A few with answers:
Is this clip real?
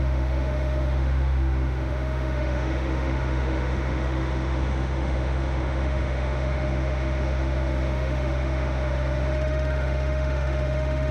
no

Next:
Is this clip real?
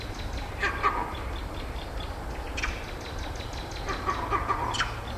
yes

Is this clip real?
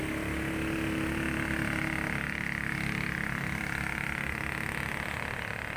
yes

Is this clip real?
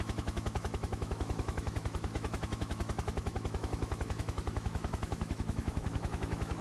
no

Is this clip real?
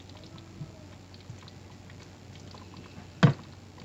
yes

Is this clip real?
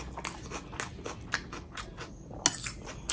yes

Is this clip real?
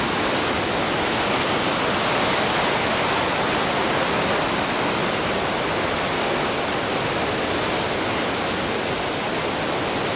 yes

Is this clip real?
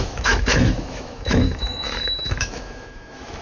no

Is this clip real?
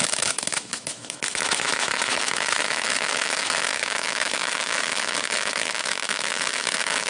no